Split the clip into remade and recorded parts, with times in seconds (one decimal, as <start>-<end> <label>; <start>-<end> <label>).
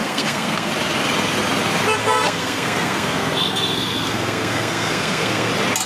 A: 0.0-0.7 remade; 0.7-2.0 recorded; 2.0-5.5 remade; 5.5-5.9 recorded